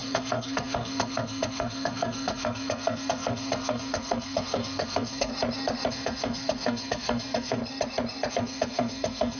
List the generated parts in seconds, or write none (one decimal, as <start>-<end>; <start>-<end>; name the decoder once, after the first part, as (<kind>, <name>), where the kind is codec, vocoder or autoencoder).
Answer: 0.0-5.3 (codec, SNAC); 5.9-7.6; 8.3-9.4